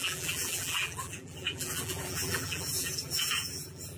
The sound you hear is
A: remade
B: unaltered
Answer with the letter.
A